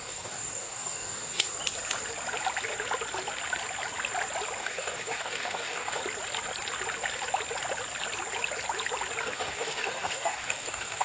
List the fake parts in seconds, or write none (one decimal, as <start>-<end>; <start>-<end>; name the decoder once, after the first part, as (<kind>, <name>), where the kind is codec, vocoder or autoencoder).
0.0-1.5 (codec, DAC); 4.6-6.0; 9.2-11.0